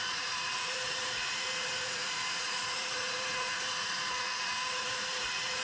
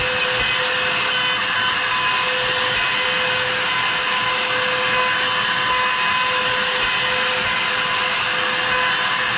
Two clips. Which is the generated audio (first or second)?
first